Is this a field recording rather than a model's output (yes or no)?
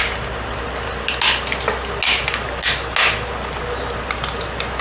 yes